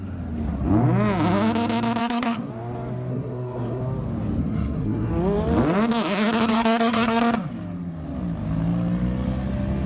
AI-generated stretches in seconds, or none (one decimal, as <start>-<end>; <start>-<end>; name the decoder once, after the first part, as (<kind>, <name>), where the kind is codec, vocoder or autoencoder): 2.0-2.5 (codec, SNAC); 3.1-3.8; 4.4-5.1; 6.5-7.2